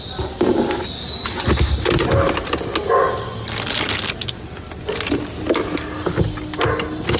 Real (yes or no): yes